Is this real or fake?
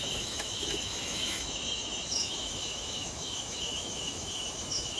fake